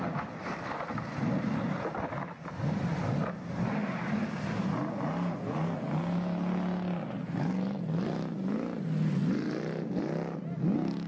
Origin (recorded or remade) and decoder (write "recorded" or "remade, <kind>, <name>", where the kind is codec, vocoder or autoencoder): recorded